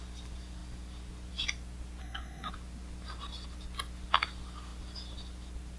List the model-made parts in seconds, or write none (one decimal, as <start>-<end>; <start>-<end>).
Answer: 2.0-2.5